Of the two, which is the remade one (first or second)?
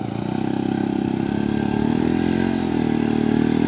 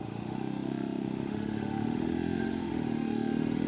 second